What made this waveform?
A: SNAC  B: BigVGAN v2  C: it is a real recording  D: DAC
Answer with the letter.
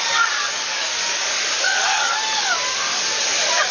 D